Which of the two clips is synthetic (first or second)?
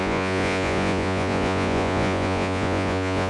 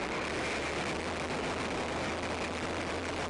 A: first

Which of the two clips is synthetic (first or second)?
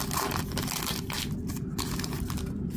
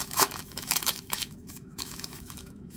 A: second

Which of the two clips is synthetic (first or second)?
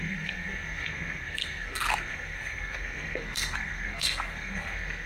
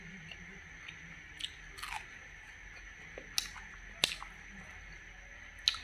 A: first